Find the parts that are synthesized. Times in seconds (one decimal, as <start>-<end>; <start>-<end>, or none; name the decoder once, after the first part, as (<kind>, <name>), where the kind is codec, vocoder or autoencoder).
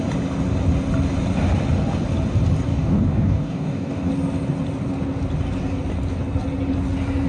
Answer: 2.7-4.1 (codec, DAC)